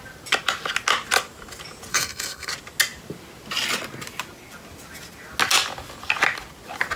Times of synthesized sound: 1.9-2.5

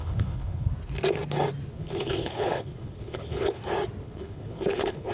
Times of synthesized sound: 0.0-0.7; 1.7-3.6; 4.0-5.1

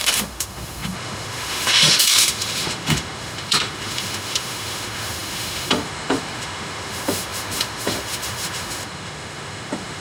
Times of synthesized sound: 0.0-10.0

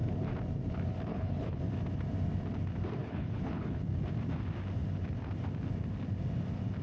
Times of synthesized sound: 1.1-1.6; 3.0-3.8